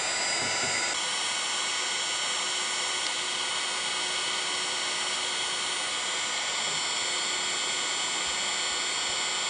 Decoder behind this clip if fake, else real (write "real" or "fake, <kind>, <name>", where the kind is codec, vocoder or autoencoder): real